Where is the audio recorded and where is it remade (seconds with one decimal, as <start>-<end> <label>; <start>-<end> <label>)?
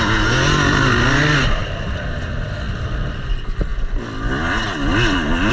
0.0-5.5 recorded